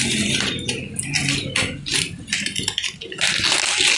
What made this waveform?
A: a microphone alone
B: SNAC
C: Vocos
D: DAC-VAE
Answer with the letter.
A